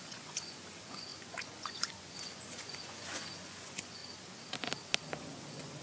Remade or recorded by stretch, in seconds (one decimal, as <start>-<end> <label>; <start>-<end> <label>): 0.0-4.0 remade; 4.0-5.2 recorded; 5.2-5.8 remade